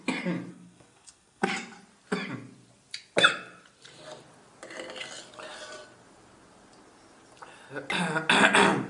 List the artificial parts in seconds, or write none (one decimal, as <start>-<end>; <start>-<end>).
0.5-1.5